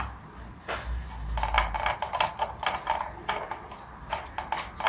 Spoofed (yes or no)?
no